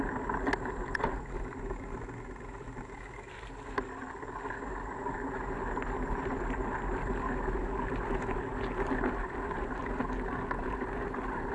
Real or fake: real